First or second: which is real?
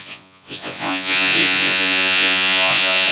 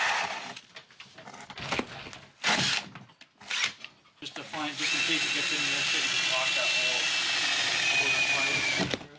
second